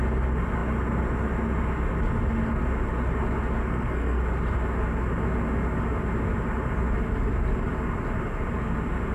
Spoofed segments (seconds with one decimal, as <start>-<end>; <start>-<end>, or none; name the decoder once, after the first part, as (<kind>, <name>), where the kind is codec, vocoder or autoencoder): 3.6-4.2 (codec, SNAC)